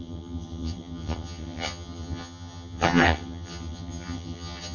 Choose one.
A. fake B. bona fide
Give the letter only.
A